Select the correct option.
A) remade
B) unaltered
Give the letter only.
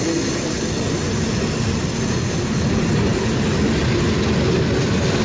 B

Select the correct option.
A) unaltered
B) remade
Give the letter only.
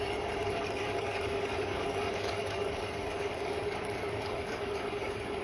B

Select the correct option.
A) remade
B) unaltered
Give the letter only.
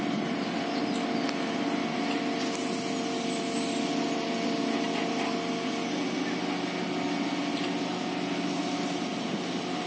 B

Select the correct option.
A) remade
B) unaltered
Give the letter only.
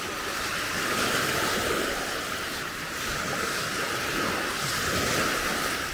B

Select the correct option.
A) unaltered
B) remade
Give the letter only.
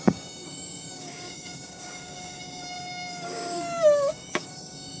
B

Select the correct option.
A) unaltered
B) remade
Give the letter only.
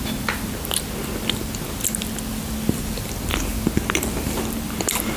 A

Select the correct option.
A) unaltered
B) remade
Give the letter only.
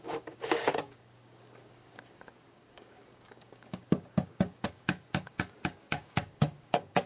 B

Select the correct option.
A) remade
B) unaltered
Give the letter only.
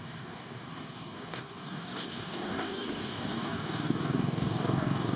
A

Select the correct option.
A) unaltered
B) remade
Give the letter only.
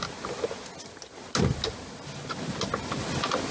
A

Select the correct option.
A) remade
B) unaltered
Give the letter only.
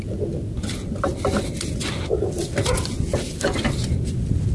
B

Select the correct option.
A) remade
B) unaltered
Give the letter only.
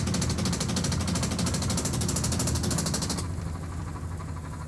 B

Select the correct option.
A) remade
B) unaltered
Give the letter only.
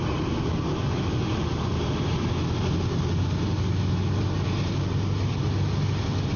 B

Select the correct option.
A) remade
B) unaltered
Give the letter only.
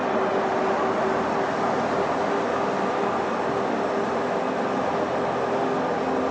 B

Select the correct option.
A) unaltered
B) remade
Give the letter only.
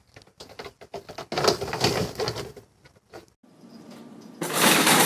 A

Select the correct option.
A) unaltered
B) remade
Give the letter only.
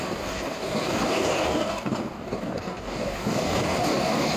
B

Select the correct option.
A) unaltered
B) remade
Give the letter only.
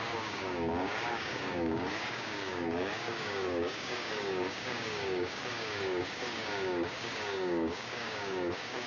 B